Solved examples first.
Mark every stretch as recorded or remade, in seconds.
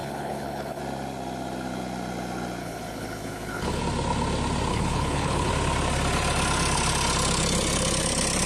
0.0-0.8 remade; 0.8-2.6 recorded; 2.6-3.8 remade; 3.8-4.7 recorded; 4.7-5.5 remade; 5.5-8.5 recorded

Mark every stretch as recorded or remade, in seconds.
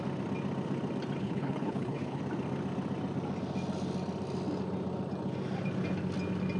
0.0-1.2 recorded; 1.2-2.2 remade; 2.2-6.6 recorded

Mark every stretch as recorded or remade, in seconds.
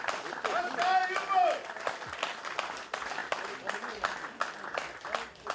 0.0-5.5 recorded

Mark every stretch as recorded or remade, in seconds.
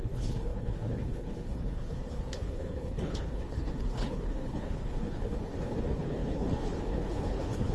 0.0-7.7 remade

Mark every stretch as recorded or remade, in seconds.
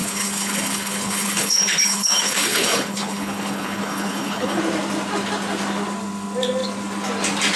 0.0-4.6 remade; 4.6-7.6 recorded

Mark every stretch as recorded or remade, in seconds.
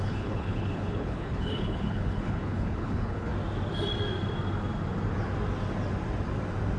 0.0-3.3 remade; 3.3-6.8 recorded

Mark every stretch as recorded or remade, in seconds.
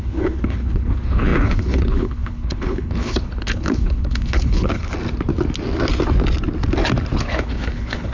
0.0-4.9 remade; 4.9-7.2 recorded; 7.2-8.1 remade